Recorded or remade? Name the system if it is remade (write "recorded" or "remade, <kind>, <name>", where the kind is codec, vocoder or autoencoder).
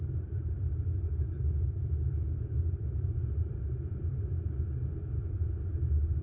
remade, vocoder, BigVGAN v2